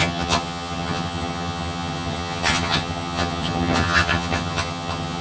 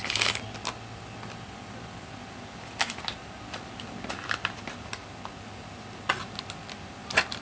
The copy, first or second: first